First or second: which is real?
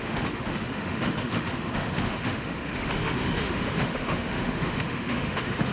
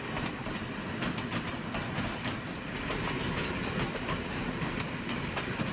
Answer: second